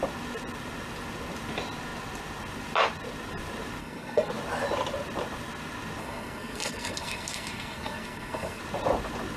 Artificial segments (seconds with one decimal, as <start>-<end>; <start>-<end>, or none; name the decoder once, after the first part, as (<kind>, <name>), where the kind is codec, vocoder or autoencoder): 3.8-4.3 (codec, SNAC); 6.0-8.6

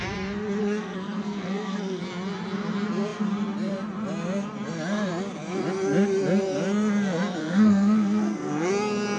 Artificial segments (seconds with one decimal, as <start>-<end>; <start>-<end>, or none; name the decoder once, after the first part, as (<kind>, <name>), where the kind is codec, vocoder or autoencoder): 0.6-2.0 (codec, SNAC); 7.4-8.7